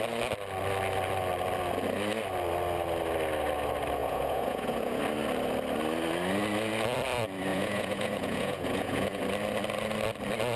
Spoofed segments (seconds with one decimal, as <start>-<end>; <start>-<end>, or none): 4.0-5.0; 7.5-9.2